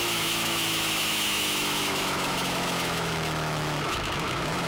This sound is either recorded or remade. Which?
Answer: remade